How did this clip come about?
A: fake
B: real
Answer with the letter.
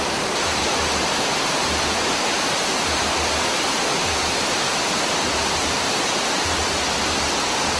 A